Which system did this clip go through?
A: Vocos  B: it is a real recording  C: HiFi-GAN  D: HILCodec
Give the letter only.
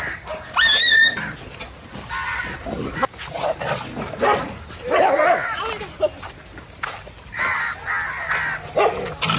B